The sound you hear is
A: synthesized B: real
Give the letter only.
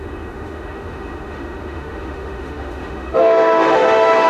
A